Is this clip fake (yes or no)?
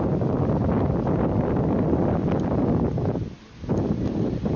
no